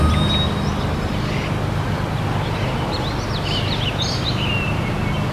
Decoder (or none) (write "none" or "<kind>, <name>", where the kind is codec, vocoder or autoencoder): none